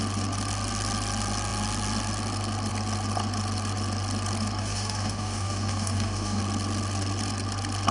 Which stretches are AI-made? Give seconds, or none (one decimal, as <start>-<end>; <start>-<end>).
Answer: 4.6-6.4